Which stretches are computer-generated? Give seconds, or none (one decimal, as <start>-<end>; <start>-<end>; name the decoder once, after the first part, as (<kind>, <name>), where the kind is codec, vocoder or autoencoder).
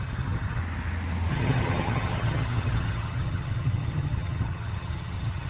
0.0-0.6 (vocoder, HiFi-GAN); 1.3-5.5